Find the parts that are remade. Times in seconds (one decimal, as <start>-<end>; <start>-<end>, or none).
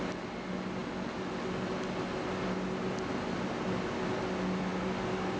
none